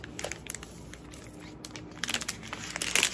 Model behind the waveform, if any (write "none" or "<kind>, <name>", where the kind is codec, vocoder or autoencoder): none